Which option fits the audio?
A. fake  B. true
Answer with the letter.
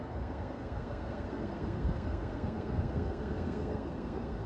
A